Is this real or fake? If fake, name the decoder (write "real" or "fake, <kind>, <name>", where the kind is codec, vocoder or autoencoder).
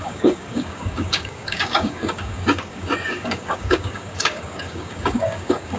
fake, codec, DAC